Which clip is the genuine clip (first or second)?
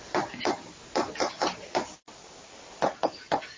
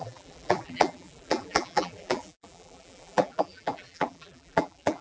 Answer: first